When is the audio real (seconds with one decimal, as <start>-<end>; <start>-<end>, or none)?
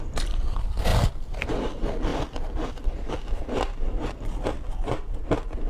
0.0-2.1; 3.1-5.7